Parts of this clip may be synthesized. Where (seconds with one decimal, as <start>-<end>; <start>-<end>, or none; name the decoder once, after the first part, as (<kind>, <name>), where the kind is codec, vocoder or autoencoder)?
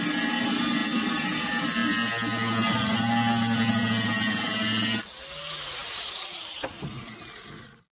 none